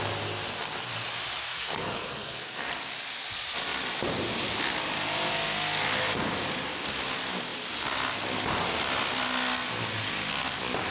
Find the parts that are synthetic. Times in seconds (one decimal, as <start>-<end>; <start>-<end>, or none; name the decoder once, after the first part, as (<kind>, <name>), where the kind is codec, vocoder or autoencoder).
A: 1.4-2.7 (codec, SNAC)